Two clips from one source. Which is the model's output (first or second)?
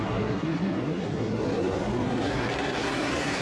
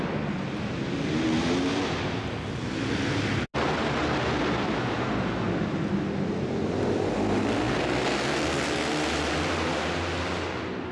first